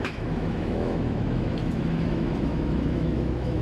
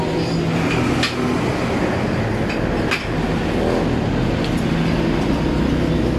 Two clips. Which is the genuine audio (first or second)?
second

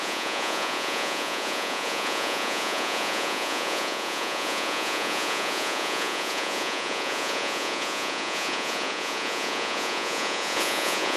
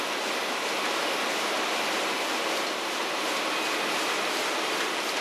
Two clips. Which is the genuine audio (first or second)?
second